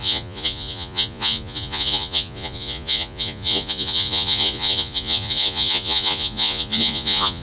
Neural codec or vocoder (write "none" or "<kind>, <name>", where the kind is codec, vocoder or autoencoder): vocoder, Vocos